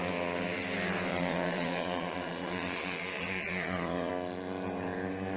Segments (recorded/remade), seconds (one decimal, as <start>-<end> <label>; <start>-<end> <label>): 0.0-1.1 recorded; 1.1-4.1 remade; 4.1-5.4 recorded